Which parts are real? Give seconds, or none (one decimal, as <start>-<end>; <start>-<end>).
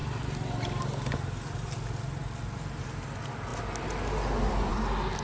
0.0-5.2